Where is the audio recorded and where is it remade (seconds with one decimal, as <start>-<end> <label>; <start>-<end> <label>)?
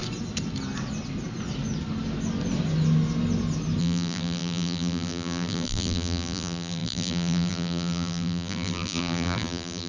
0.0-3.8 recorded; 3.8-9.9 remade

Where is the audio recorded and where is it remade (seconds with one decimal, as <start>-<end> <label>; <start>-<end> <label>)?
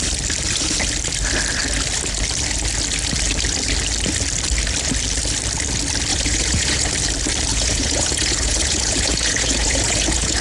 0.0-6.1 recorded; 6.1-6.9 remade; 6.9-7.5 recorded; 7.5-10.4 remade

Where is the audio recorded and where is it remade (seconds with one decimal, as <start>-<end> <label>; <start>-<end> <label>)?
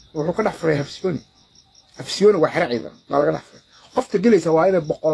0.0-0.6 recorded; 0.6-1.5 remade; 1.5-2.8 recorded; 2.8-4.0 remade; 4.0-5.1 recorded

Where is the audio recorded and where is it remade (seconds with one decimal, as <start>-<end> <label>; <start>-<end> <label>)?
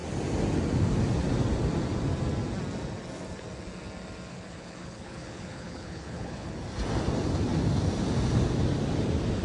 0.0-4.3 recorded; 4.3-6.5 remade; 6.5-9.4 recorded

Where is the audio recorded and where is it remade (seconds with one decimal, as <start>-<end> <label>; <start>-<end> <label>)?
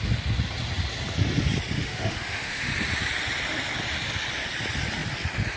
0.0-1.8 recorded; 1.8-2.7 remade; 2.7-5.6 recorded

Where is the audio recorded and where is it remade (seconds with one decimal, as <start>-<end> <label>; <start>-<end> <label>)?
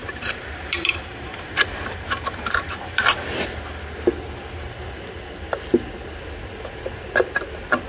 0.0-2.8 remade; 2.8-7.9 recorded